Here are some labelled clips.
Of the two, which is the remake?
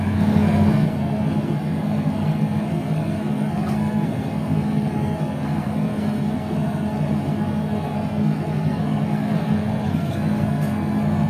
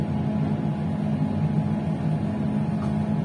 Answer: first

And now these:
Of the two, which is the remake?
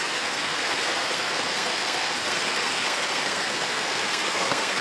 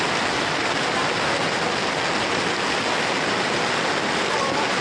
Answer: first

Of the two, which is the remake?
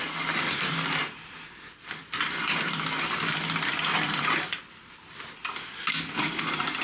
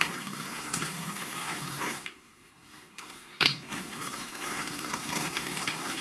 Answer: second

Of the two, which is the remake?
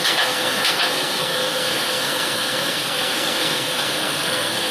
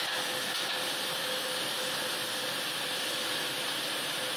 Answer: first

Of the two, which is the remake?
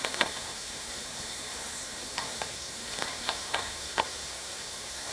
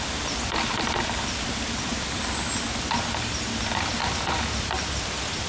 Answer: first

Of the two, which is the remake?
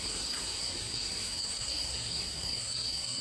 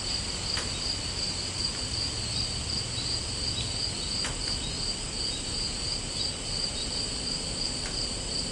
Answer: first